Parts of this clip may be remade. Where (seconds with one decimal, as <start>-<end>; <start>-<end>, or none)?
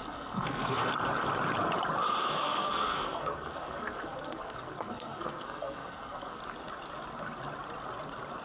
0.0-0.9; 2.4-6.4